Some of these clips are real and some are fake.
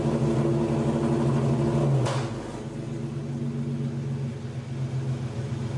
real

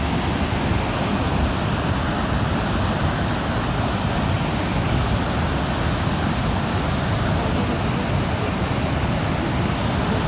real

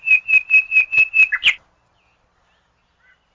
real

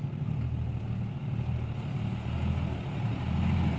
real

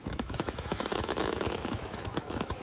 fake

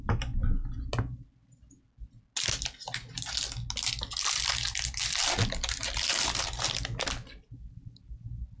real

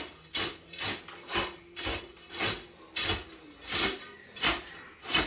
real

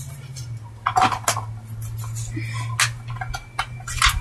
real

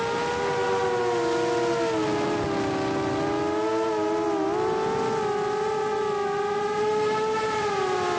real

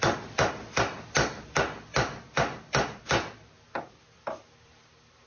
fake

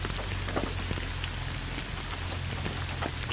real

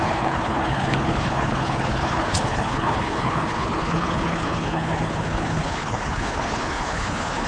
fake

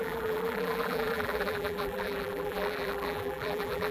fake